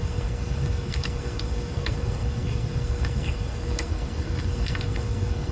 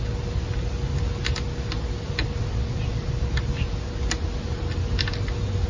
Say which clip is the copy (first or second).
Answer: first